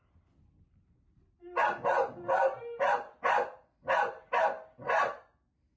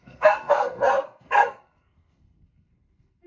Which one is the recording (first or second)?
first